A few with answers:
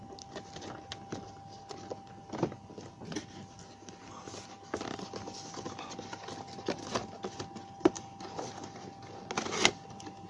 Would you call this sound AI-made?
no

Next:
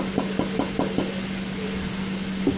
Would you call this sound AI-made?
no